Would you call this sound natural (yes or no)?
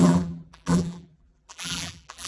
no